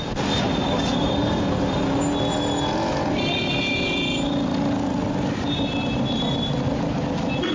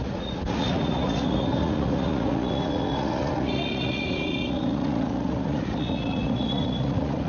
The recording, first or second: first